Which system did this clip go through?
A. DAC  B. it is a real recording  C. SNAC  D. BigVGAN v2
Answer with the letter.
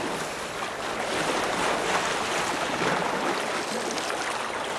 B